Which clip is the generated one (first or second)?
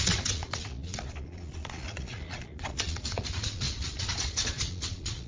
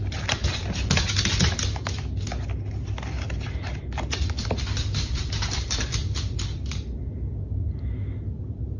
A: first